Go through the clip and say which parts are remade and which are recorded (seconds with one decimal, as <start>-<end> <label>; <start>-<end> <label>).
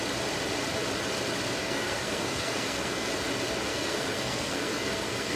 0.0-1.6 recorded; 1.6-3.1 remade; 3.1-3.7 recorded; 3.7-5.4 remade